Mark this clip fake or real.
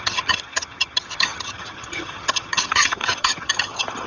fake